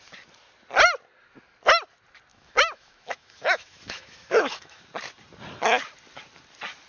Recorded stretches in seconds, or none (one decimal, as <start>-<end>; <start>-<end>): 0.0-2.3; 4.8-6.9